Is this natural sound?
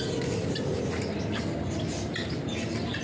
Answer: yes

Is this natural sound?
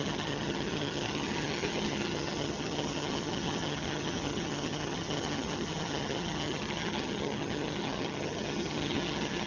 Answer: no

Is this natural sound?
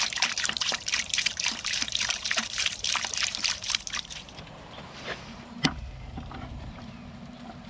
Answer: no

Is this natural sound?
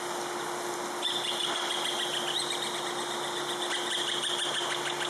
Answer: yes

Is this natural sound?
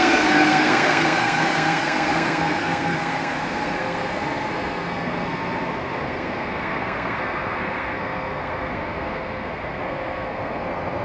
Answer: no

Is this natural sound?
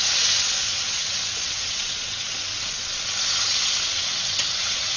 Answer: no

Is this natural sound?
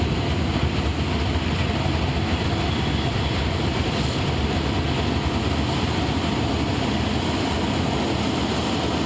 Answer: yes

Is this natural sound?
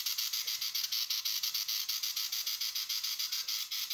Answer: yes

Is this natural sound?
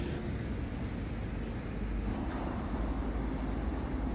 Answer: yes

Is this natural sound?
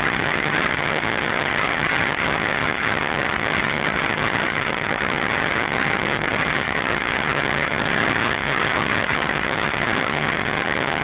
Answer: no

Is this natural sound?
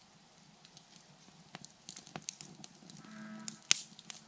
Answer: yes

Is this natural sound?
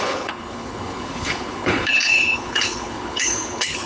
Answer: no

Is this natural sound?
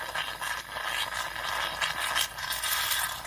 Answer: yes